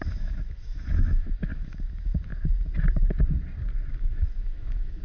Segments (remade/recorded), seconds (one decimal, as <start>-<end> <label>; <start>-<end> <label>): 0.0-2.3 remade; 2.3-3.9 recorded; 3.9-5.0 remade